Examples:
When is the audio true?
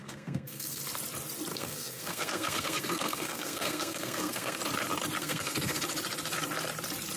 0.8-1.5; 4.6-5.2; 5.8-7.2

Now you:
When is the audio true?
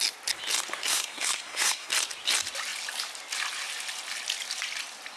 0.0-0.9; 1.9-5.2